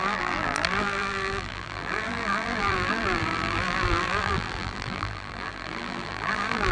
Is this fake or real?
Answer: fake